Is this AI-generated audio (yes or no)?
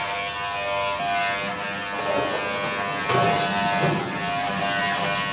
no